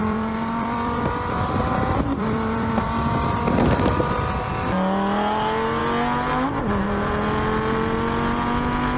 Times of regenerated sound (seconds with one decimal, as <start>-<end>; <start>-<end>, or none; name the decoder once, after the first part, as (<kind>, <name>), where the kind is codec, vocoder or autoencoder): 0.0-4.5 (vocoder, BigVGAN v2)